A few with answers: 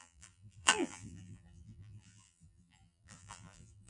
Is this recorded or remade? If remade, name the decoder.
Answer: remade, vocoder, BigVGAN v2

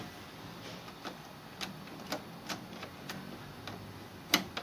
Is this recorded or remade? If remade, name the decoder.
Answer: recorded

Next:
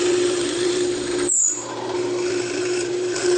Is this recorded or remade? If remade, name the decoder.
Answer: remade, vocoder, BigVGAN v2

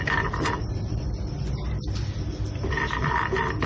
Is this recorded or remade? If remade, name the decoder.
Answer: recorded